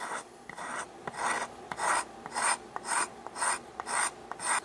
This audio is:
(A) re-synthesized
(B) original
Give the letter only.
B